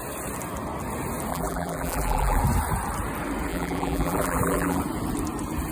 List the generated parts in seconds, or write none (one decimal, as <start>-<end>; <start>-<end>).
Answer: 1.3-2.4; 3.5-4.8